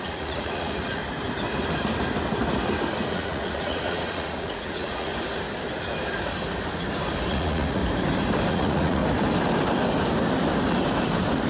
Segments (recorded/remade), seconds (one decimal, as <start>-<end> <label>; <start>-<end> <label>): 0.0-1.0 remade; 1.0-3.1 recorded; 3.1-5.1 remade; 5.1-7.3 recorded; 7.3-7.8 remade; 7.8-8.5 recorded; 8.5-9.0 remade; 9.0-11.5 recorded